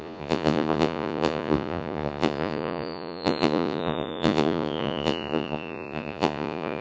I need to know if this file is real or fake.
fake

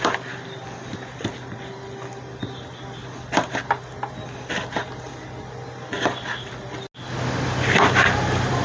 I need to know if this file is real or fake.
real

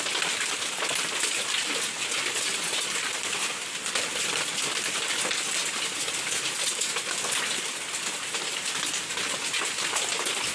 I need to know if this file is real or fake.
real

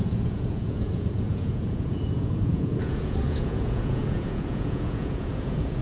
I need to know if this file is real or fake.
fake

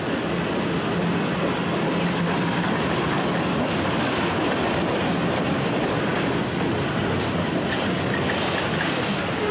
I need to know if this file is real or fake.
real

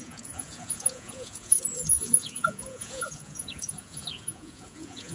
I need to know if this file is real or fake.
fake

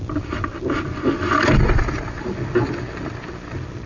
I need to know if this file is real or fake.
real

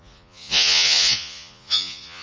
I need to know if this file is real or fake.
fake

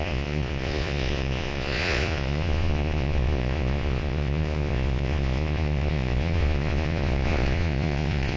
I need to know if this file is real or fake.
fake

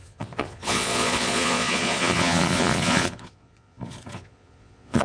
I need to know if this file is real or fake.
fake